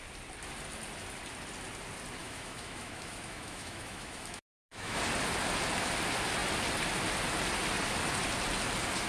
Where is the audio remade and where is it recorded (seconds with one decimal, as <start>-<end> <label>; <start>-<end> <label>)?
0.0-2.2 recorded; 2.2-5.0 remade; 5.0-9.1 recorded